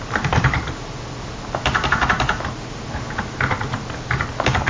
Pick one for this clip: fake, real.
real